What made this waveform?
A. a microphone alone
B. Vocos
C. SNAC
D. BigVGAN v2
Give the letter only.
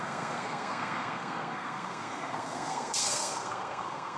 C